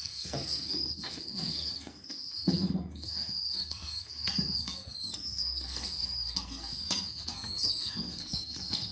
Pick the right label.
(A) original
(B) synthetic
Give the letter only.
B